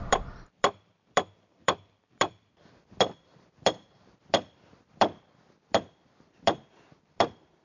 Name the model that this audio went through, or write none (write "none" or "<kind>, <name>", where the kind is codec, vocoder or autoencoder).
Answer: vocoder, BigVGAN v2